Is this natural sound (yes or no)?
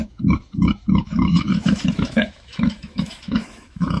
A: no